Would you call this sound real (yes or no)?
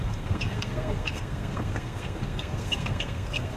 no